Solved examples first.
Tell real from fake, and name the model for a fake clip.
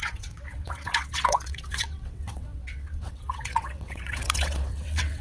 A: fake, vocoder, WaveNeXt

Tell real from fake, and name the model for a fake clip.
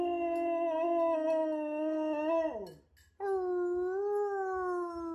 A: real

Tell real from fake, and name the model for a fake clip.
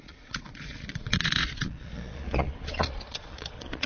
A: fake, vocoder, Vocos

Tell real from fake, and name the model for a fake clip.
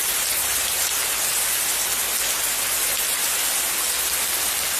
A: real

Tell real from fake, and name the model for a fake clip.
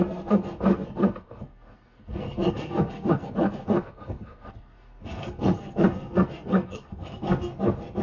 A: fake, codec, SNAC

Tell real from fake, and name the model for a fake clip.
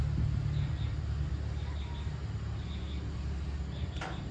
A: real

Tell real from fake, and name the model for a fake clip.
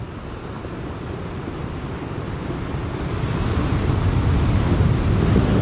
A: real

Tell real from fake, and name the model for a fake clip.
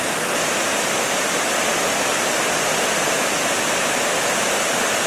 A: real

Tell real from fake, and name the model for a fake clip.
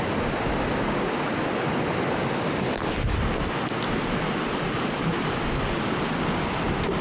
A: real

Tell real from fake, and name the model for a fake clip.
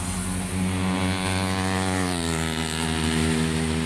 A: real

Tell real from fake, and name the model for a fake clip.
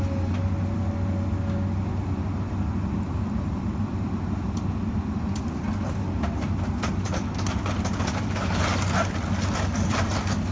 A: real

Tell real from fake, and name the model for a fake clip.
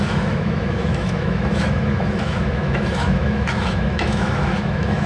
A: fake, autoencoder, DAC-VAE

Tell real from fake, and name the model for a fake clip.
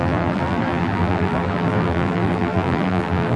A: fake, vocoder, BigVGAN v2